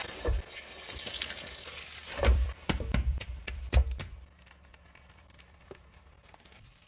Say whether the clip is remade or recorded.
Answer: remade